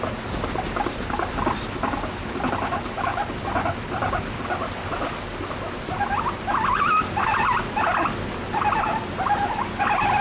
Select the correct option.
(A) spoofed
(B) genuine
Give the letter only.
B